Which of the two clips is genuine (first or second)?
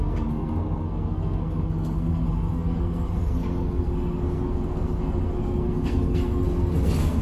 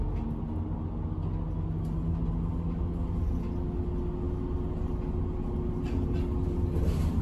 second